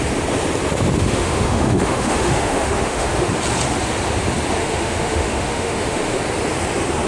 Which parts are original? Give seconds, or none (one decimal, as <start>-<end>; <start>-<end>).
0.0-1.0; 3.3-4.6; 6.2-7.1